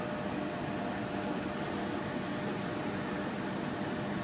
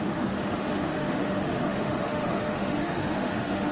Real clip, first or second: first